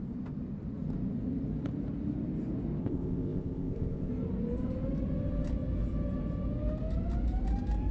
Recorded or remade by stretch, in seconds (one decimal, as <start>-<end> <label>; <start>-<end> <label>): 0.0-2.8 recorded; 2.8-4.1 remade; 4.1-7.9 recorded